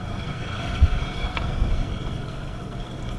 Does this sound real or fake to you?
fake